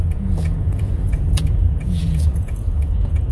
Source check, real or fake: fake